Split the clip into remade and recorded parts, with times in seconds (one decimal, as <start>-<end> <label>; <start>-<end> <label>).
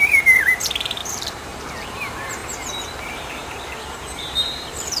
0.0-5.0 remade